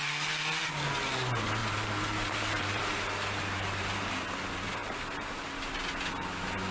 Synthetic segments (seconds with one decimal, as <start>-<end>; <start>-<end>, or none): 1.6-4.1; 4.8-5.8